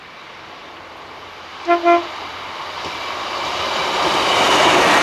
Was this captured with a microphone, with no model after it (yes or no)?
yes